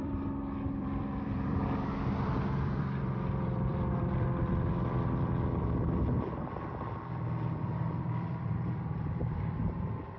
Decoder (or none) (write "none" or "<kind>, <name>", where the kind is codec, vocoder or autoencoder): vocoder, BigVGAN v2